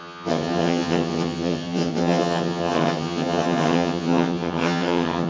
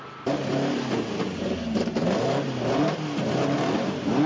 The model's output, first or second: first